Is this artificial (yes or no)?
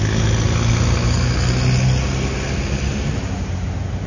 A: no